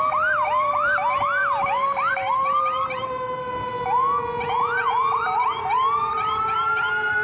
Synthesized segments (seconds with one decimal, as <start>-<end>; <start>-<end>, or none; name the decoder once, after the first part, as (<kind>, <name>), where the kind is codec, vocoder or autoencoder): 0.0-1.4 (vocoder, BigVGAN v2); 2.1-3.7; 5.0-7.2